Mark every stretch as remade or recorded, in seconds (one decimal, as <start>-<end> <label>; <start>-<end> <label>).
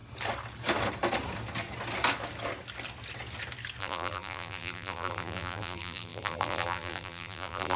0.0-3.8 recorded; 3.8-7.8 remade